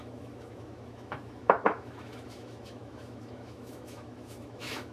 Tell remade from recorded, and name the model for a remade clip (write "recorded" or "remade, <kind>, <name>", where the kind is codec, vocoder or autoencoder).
remade, autoencoder, DAC-VAE